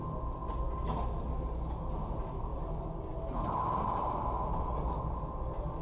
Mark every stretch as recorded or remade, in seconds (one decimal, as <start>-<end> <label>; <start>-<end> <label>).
0.0-5.8 recorded